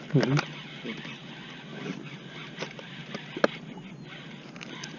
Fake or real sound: real